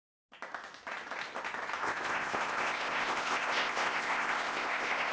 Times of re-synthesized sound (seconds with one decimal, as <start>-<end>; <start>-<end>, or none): 1.8-5.1

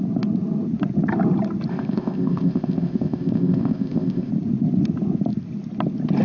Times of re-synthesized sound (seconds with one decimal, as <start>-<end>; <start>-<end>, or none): 1.7-4.3

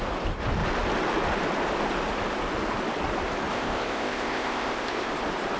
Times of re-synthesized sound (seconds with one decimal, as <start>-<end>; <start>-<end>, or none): 3.5-5.1

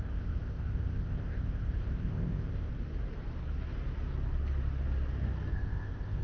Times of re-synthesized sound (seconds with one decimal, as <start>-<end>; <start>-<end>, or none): 0.0-2.7; 5.5-6.2

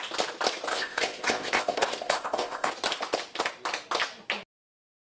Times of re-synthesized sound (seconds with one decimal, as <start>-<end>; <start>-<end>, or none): 0.7-2.7

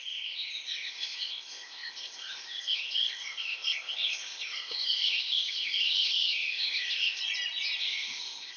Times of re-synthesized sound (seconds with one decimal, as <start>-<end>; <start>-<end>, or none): 0.0-7.2; 7.8-8.6

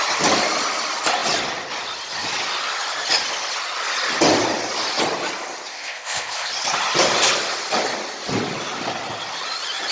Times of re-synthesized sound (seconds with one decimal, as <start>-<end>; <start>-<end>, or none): 5.7-6.5